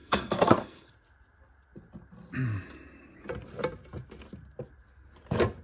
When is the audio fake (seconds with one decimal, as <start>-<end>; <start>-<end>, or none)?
0.0-0.9